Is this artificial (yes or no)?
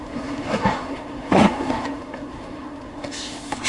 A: yes